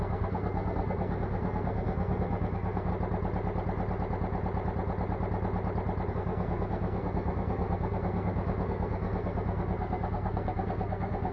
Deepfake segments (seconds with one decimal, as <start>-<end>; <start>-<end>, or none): 0.0-2.9; 6.1-11.3

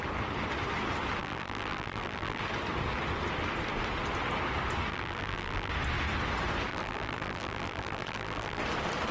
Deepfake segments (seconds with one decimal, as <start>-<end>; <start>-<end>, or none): 1.2-2.4; 4.9-5.7; 6.7-8.6

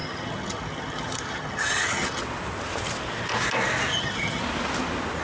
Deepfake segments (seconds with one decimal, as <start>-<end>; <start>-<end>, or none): 0.0-2.2; 3.9-4.4

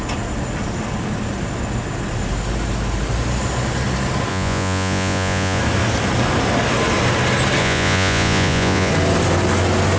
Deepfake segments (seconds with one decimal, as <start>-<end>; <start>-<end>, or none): 4.3-5.6; 7.6-8.9

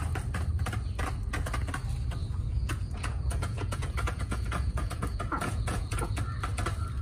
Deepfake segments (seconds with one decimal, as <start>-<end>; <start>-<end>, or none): 2.2-6.2

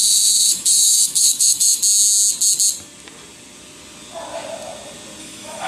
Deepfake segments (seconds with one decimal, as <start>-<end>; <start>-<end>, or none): 0.0-1.8; 5.2-5.7

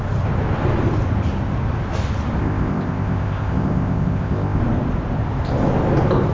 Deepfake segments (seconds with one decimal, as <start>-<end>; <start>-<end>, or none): 2.4-4.6